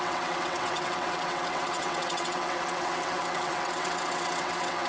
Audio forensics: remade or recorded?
remade